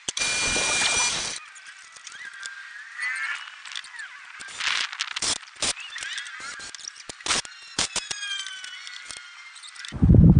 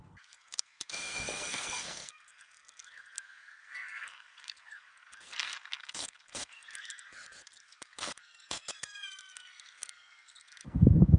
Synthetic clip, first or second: second